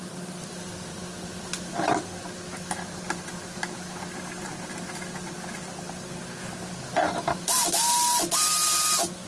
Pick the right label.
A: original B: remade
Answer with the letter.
A